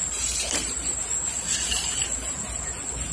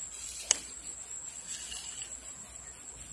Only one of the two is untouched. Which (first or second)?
second